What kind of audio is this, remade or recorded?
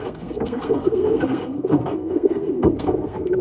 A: remade